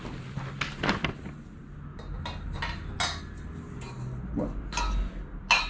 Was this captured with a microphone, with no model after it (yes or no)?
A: yes